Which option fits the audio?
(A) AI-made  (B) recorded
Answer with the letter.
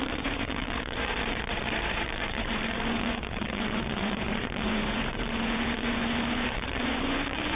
A